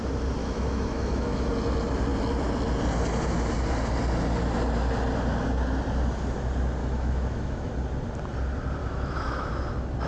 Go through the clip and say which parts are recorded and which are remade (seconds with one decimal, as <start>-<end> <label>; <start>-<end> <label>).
0.0-0.4 recorded; 0.4-1.5 remade; 1.5-6.8 recorded; 6.8-7.7 remade; 7.7-8.8 recorded; 8.8-9.5 remade; 9.5-10.1 recorded